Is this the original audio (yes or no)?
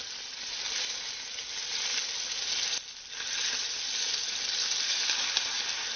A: yes